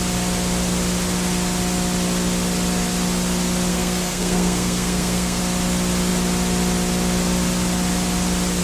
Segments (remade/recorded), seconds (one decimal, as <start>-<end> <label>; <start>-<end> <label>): 0.0-3.7 recorded; 3.7-5.4 remade; 5.4-8.6 recorded